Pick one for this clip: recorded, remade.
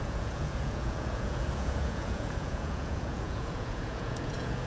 remade